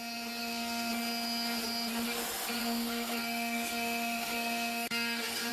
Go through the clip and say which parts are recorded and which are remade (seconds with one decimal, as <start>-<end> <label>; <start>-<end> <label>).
0.0-0.4 recorded; 0.4-0.9 remade; 0.9-2.6 recorded; 2.6-5.5 remade